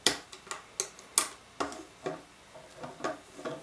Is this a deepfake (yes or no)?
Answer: no